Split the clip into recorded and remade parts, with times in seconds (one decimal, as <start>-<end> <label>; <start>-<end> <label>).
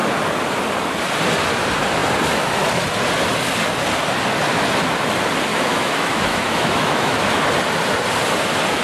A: 0.0-5.5 recorded; 5.5-7.4 remade; 7.4-8.8 recorded